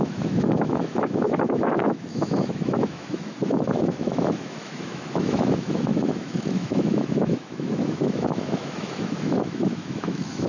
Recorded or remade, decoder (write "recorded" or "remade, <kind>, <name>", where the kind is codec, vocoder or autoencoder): remade, autoencoder, DAC-VAE